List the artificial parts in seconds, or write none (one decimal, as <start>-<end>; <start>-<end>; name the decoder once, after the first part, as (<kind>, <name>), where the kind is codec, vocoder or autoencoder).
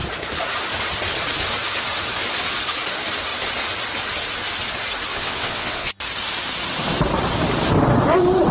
5.1-5.9 (vocoder, WaveNeXt)